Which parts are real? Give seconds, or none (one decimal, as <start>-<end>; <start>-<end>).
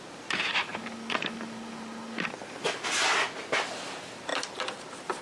0.0-0.7; 3.8-4.3